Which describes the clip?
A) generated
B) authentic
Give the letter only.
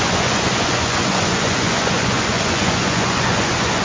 A